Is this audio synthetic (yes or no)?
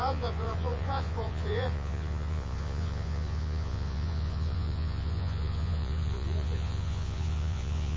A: yes